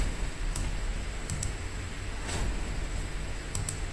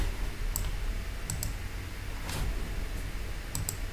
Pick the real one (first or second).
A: second